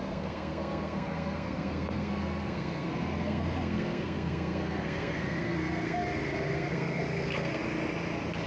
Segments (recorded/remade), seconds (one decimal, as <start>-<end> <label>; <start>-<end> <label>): 0.0-7.6 remade; 7.6-8.5 recorded